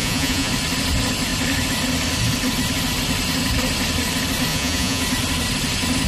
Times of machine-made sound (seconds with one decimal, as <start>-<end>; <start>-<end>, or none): 0.0-0.5; 4.5-5.0